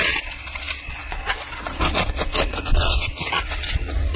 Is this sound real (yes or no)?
no